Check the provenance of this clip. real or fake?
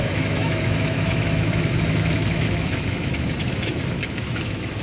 fake